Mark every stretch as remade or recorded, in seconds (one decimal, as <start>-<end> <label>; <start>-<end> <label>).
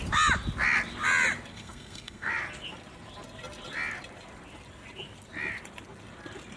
0.0-1.5 recorded; 1.5-2.3 remade; 2.3-6.6 recorded